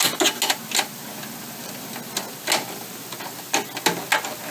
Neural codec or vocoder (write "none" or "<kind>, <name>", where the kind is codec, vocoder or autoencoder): none